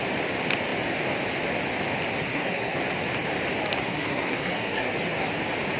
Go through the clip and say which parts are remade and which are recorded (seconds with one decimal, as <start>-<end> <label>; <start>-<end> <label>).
0.0-2.1 recorded; 2.1-2.8 remade; 2.8-3.8 recorded; 3.8-4.9 remade; 4.9-5.8 recorded